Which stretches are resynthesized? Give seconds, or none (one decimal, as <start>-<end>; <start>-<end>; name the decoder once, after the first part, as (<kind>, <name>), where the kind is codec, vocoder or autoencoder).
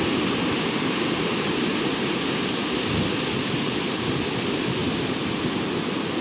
none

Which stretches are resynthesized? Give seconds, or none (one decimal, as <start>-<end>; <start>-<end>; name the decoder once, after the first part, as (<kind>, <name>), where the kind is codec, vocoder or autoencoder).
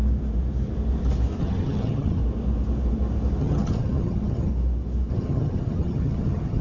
1.4-2.2 (vocoder, HiFi-GAN); 3.4-4.5; 5.1-6.6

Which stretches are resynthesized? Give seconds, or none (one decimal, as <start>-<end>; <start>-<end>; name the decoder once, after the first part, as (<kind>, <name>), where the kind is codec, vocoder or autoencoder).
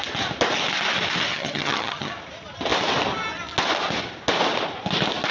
1.3-2.1 (vocoder, HiFi-GAN)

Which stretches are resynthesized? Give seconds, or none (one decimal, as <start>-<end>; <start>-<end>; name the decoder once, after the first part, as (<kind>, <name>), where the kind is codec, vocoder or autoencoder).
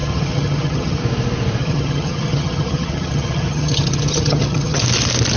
0.0-1.0 (vocoder, HiFi-GAN); 1.6-4.8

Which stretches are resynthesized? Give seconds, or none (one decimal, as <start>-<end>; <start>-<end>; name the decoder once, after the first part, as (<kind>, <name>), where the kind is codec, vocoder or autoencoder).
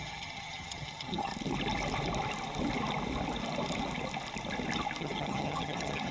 0.0-1.3 (vocoder, HiFi-GAN); 5.0-6.1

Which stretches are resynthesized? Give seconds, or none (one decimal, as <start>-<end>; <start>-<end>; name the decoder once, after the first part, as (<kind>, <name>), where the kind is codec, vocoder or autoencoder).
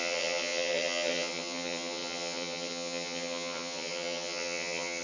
0.0-5.0 (vocoder, HiFi-GAN)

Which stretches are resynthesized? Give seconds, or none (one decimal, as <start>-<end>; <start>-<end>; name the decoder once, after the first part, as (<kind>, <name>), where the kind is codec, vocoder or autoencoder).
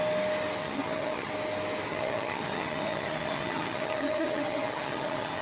0.6-1.3 (vocoder, HiFi-GAN); 1.9-5.4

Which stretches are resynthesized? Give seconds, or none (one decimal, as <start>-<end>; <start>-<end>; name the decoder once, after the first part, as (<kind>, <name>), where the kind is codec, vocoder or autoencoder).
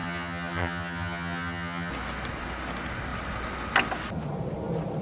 0.0-1.9 (vocoder, HiFi-GAN)